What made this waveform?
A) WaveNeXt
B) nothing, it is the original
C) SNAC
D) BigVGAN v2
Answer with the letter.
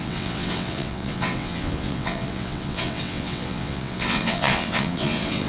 A